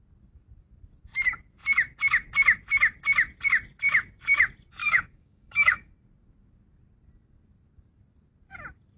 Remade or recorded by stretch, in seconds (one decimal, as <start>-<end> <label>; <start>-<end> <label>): 0.0-4.8 recorded; 4.8-5.9 remade; 5.9-9.0 recorded